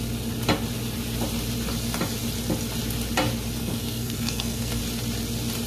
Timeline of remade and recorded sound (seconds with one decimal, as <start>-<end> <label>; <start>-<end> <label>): 0.0-3.6 recorded; 3.6-4.8 remade; 4.8-5.7 recorded